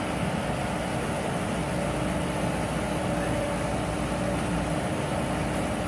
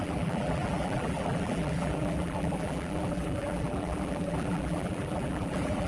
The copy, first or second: second